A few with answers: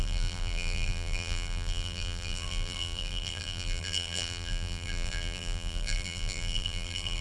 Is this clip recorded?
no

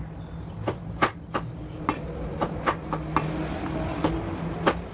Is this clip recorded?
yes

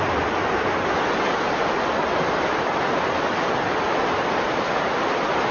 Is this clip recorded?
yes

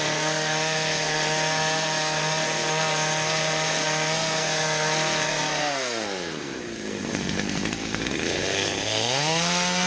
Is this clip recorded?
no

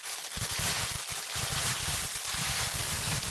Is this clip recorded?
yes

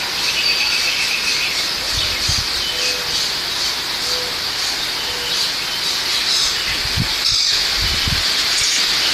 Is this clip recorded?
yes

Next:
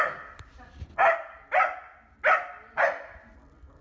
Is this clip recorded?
yes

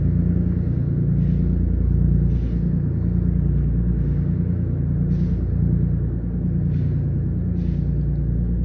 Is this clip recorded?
yes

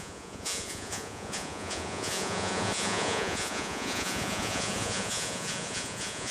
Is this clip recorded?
no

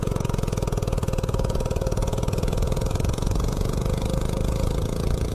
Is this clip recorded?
no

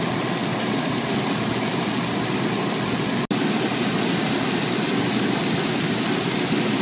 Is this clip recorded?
yes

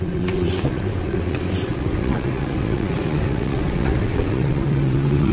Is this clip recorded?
no